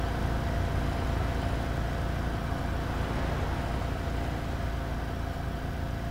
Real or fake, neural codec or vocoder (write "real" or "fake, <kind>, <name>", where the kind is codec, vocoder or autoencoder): real